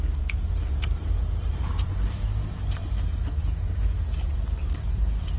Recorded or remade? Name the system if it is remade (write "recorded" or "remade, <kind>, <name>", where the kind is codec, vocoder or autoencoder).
recorded